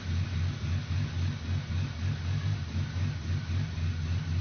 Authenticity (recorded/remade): recorded